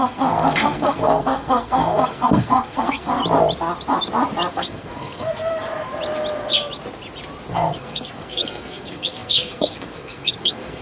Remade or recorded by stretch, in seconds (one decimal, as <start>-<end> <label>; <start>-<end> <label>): 0.0-3.2 remade; 3.2-4.5 recorded; 4.5-5.5 remade; 5.5-7.5 recorded; 7.5-10.8 remade